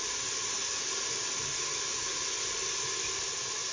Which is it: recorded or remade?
recorded